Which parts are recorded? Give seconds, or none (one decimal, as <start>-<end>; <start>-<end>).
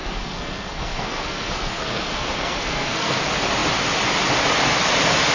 3.2-5.3